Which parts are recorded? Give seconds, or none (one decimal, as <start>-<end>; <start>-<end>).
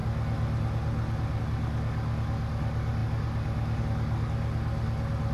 0.0-5.3